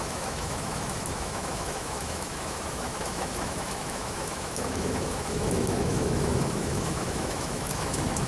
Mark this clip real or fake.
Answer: fake